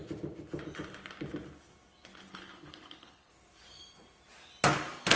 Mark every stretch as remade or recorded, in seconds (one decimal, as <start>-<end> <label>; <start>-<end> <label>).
0.0-2.3 recorded; 2.3-3.3 remade; 3.3-5.2 recorded